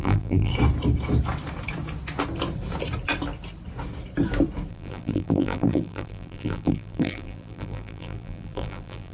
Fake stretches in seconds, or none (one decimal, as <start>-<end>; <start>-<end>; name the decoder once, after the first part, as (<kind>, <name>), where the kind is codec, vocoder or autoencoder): 0.0-0.5 (vocoder, BigVGAN v2); 4.7-9.1